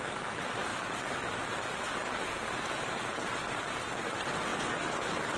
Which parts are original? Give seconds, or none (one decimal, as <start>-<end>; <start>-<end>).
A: 0.0-0.7; 1.6-2.0; 4.0-5.4